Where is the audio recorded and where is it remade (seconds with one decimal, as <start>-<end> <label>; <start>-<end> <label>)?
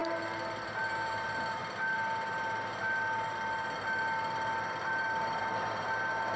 0.0-0.8 remade; 0.8-1.6 recorded; 1.6-5.4 remade; 5.4-6.4 recorded